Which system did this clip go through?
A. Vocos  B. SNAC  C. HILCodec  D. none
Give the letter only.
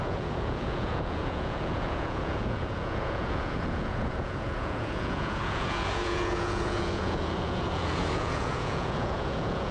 A